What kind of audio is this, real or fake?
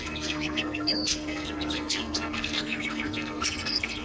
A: fake